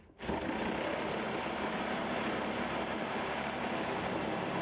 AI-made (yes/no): no